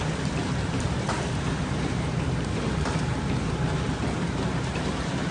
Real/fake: fake